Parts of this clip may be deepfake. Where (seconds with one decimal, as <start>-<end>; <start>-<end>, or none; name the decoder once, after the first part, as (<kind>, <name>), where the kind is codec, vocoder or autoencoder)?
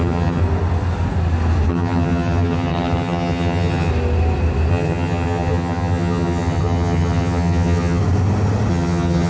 0.0-0.4 (vocoder, HiFi-GAN); 1.7-3.9; 4.7-8.0; 8.7-9.3